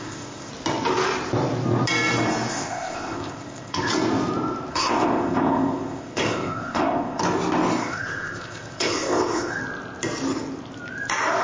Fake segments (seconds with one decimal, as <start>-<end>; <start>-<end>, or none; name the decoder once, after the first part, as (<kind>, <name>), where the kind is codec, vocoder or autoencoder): 0.0-0.5 (codec, ZipCodec); 2.5-3.9; 4.7-7.2; 7.8-9.6